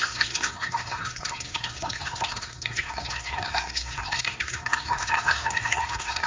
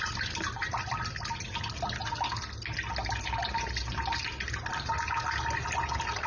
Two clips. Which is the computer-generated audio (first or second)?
first